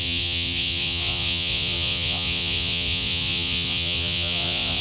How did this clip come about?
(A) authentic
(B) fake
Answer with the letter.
B